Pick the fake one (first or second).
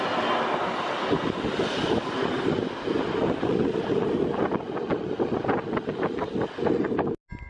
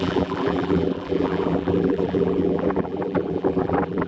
second